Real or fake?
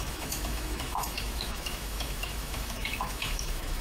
fake